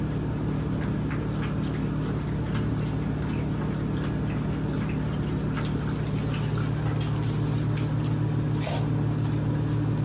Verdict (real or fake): real